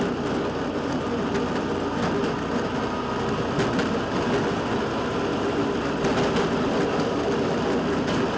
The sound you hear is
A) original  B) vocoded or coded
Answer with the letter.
A